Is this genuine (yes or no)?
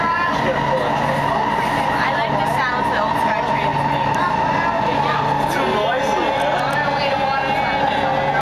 yes